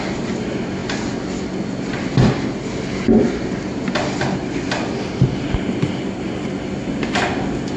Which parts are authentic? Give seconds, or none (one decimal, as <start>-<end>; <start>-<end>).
0.0-7.8

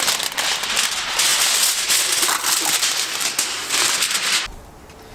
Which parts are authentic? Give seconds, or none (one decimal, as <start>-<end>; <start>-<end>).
0.0-5.1